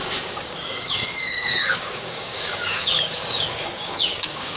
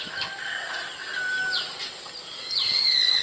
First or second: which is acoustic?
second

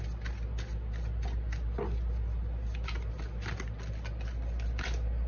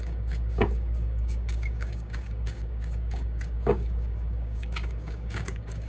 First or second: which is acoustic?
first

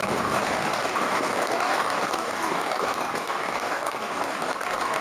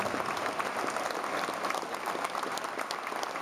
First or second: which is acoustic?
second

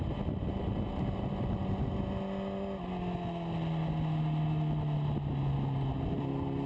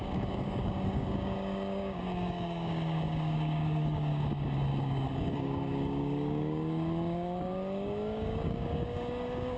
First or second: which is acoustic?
first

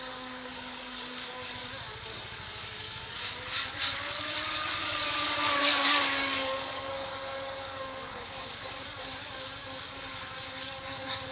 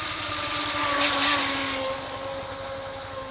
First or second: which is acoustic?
second